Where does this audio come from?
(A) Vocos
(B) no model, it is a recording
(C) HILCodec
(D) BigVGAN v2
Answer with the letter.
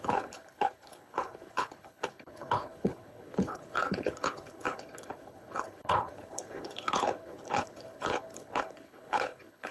C